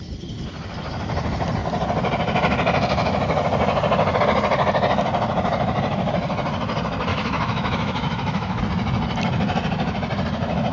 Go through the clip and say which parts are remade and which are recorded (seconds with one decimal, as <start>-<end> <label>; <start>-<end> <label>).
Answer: 0.0-7.1 recorded; 7.1-8.6 remade; 8.6-10.7 recorded